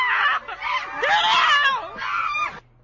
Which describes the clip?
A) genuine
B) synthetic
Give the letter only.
A